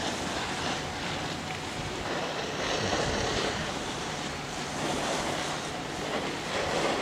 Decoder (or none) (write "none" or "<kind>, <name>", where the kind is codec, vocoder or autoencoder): vocoder, BigVGAN v2